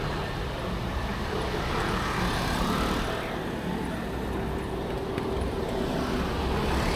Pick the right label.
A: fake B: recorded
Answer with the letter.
B